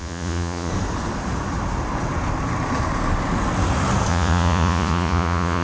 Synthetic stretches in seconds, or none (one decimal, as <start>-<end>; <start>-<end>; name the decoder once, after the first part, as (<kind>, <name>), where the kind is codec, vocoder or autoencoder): 0.0-0.7 (vocoder, Vocos); 4.1-5.6